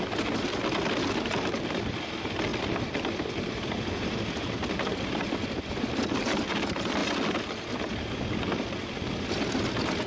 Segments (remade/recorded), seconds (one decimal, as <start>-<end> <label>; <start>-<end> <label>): 0.0-10.1 recorded